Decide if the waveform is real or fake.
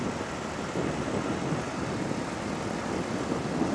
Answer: real